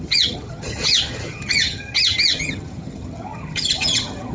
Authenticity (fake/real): fake